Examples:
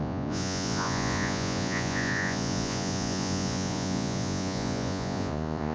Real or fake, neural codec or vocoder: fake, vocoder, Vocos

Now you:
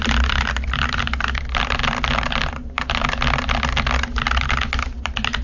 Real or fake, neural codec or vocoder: real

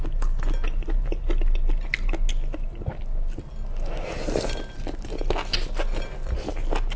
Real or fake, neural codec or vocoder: real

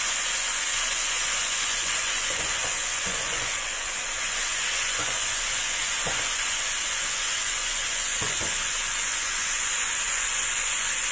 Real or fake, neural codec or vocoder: fake, vocoder, Vocos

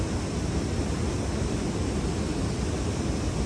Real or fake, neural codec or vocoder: real